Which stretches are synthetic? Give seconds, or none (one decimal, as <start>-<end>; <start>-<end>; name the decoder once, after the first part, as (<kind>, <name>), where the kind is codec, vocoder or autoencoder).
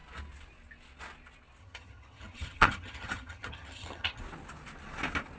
1.6-4.2 (vocoder, HiFi-GAN)